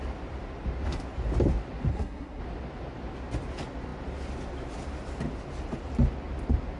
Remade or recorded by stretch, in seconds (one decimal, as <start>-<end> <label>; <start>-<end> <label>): 0.0-1.9 recorded; 1.9-2.4 remade; 2.4-6.8 recorded